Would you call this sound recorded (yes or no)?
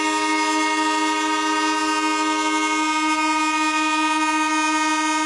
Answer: yes